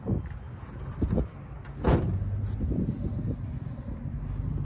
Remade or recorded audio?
recorded